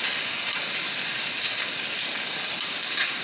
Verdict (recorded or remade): recorded